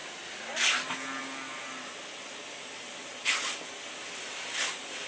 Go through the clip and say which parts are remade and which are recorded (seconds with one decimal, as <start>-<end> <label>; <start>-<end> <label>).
0.0-5.1 recorded